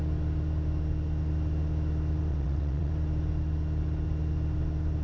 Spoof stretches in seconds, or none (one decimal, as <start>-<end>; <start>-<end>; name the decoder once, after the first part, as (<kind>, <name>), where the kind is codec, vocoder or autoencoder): 2.3-2.9 (vocoder, WaveNeXt)

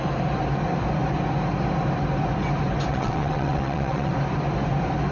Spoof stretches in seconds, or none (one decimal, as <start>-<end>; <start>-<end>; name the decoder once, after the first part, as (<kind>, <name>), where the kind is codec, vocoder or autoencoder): 2.9-4.1 (vocoder, WaveNeXt)

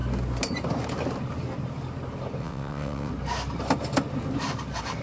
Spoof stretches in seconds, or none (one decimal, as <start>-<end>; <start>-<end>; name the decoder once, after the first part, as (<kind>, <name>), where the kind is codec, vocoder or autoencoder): 2.4-3.1 (vocoder, WaveNeXt)

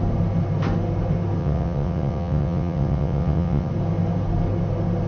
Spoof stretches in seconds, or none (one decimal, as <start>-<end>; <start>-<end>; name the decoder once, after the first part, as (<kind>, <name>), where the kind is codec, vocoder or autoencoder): 1.4-3.7 (vocoder, WaveNeXt)

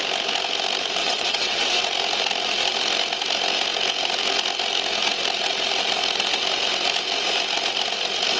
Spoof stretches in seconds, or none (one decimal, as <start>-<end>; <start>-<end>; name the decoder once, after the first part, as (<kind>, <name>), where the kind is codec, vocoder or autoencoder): 1.0-1.8 (vocoder, WaveNeXt)